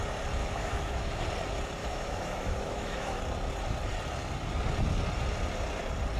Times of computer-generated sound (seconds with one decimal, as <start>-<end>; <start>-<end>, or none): 0.4-1.2; 1.8-3.2